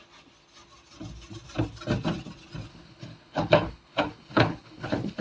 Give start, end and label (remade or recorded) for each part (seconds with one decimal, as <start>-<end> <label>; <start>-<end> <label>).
0.0-2.7 recorded; 2.7-5.2 remade